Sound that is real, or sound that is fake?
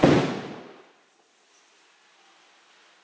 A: real